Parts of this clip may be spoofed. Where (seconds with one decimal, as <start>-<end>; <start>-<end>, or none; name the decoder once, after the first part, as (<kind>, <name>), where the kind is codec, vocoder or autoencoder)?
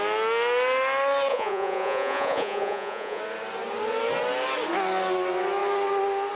1.3-3.2 (vocoder, Vocos)